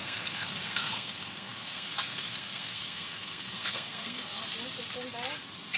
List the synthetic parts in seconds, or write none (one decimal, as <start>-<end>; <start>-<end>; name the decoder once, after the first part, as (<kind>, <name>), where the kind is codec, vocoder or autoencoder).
0.0-4.4 (codec, SNAC)